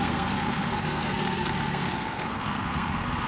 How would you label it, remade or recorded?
remade